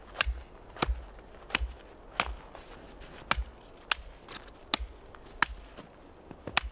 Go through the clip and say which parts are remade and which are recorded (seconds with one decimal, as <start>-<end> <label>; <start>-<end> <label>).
0.0-6.7 recorded